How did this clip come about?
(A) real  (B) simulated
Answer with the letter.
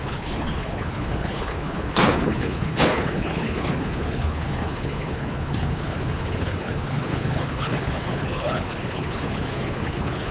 B